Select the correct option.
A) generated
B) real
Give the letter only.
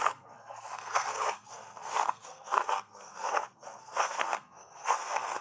A